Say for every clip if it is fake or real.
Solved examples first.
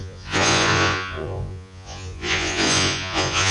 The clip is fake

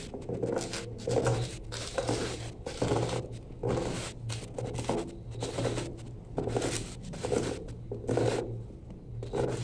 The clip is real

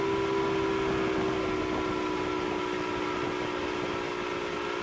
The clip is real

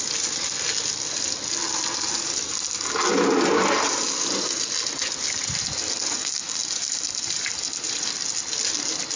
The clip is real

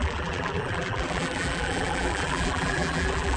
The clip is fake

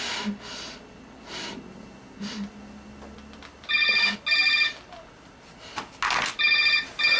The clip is real